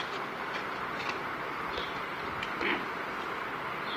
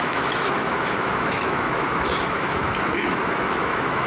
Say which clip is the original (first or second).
first